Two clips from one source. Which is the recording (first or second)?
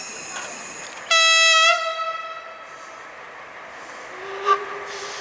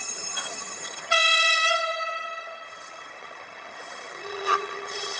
first